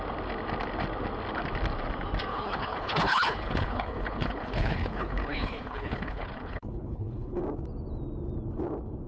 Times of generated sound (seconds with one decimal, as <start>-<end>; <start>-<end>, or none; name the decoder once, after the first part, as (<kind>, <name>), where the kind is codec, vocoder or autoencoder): 2.3-7.4 (codec, HILCodec)